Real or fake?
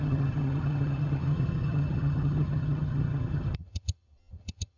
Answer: fake